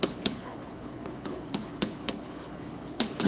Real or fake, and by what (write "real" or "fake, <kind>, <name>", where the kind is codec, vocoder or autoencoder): fake, codec, HILCodec